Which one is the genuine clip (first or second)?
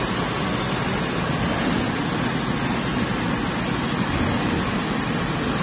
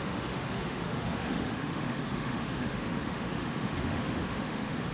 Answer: first